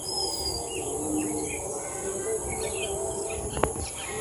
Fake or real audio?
real